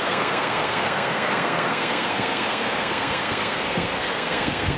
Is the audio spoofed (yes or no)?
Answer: yes